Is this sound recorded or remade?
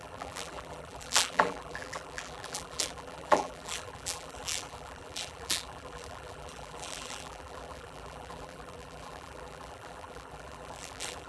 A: remade